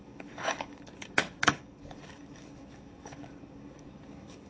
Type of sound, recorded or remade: remade